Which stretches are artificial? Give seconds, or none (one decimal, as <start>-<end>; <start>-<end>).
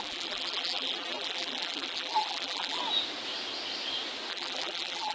0.0-2.8; 4.3-5.1